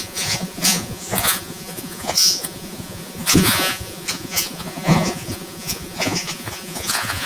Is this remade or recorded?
remade